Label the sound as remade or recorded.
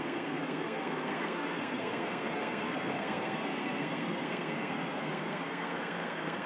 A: remade